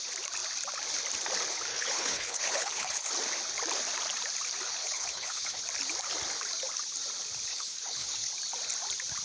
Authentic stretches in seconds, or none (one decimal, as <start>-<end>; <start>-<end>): 0.0-1.7; 3.1-4.8; 5.6-7.5; 8.3-9.2